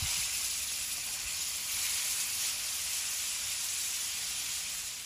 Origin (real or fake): fake